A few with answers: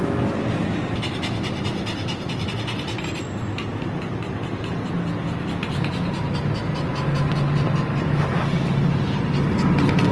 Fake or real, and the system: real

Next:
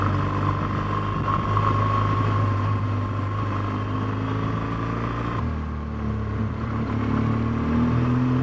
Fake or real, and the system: real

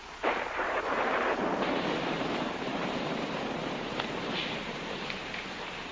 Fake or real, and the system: fake, vocoder, BigVGAN v2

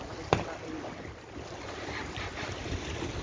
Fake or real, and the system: real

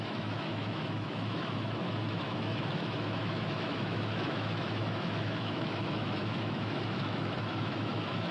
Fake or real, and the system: fake, autoencoder, DAC-VAE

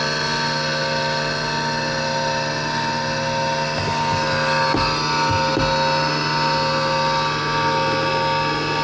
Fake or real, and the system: real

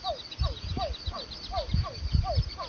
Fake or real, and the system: real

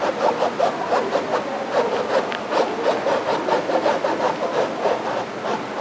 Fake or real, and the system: real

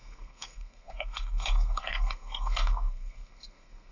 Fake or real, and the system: fake, codec, SNAC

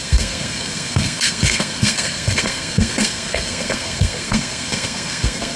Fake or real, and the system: fake, codec, SNAC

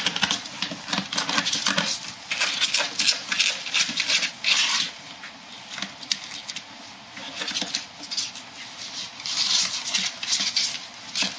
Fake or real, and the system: real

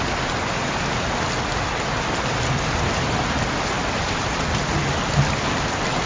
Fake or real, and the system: real